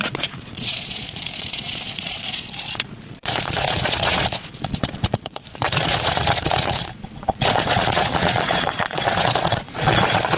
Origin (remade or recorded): remade